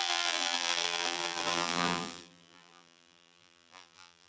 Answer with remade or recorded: remade